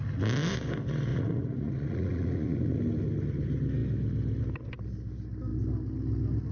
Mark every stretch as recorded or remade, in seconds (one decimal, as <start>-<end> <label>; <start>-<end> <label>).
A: 0.0-1.1 recorded; 1.1-2.8 remade; 2.8-6.5 recorded